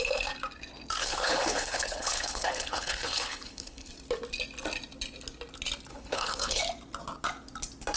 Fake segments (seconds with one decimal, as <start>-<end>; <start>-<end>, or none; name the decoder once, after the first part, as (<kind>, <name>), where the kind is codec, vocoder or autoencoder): 1.0-3.9 (codec, HILCodec); 5.9-6.6